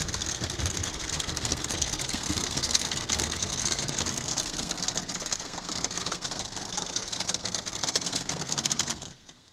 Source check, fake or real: fake